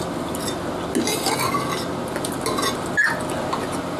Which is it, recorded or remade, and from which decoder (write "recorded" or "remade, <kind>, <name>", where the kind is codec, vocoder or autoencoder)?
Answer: recorded